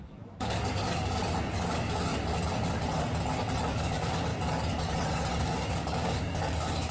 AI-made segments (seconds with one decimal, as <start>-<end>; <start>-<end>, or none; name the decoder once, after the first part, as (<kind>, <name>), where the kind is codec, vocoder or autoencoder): 0.0-1.2 (codec, DAC); 1.7-2.1; 3.6-4.3; 5.3-6.9